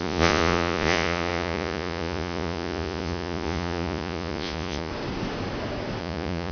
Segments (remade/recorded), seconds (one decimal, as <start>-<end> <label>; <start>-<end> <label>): 0.0-4.9 remade; 4.9-6.0 recorded; 6.0-6.5 remade